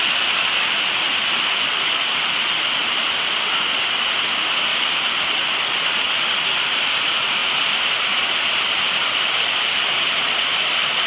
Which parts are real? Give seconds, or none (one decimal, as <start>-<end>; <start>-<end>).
0.0-4.7; 5.3-11.1